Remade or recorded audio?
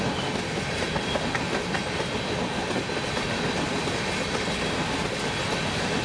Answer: recorded